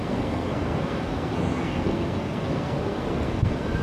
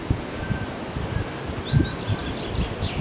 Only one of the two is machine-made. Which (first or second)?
first